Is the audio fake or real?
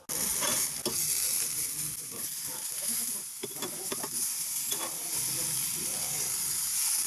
real